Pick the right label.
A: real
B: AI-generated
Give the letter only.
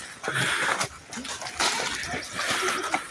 A